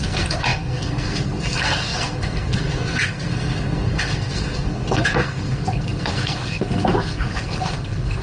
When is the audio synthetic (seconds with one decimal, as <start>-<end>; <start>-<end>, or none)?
0.0-8.2